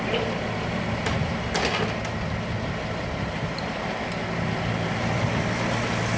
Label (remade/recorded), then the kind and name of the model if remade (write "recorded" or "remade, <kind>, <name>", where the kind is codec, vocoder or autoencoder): recorded